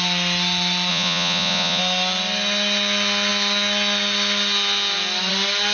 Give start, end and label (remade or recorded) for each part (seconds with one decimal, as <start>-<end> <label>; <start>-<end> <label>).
0.0-0.9 recorded; 0.9-1.8 remade; 1.8-5.7 recorded